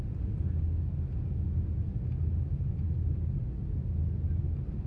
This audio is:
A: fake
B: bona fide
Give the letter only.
B